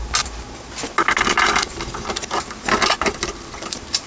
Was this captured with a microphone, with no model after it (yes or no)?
yes